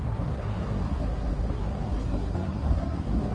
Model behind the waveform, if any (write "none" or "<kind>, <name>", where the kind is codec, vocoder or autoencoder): codec, SNAC